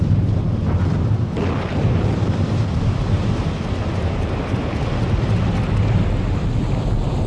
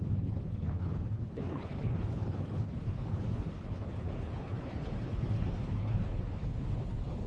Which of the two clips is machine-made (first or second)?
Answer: second